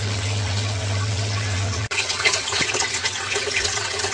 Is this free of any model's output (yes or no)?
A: no